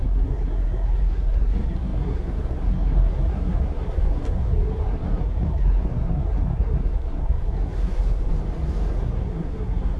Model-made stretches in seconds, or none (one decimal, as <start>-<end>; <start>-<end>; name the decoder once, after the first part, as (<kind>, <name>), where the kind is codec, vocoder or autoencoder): 0.0-8.3 (codec, SNAC); 8.9-10.0